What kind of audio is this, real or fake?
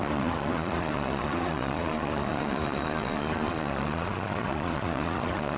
fake